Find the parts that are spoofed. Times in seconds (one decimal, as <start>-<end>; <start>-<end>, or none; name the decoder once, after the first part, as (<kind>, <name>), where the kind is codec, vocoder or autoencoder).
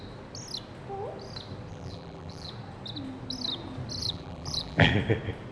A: 1.7-2.5 (vocoder, BigVGAN v2); 4.0-4.9